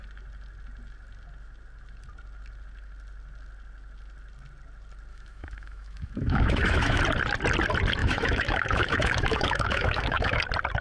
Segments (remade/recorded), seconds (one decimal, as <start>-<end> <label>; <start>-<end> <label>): 0.0-5.1 recorded; 5.1-7.0 remade; 7.0-8.0 recorded; 8.0-10.4 remade; 10.4-10.8 recorded